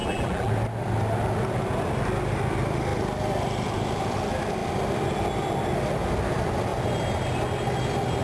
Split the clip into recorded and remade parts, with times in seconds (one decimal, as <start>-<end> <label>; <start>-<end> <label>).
0.0-0.5 remade; 0.5-8.2 recorded